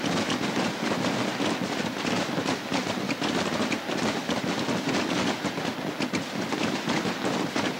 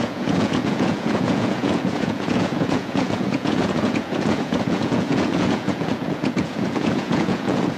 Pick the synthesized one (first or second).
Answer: second